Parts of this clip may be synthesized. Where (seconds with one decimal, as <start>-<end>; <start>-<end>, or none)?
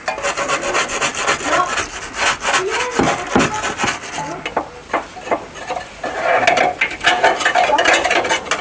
none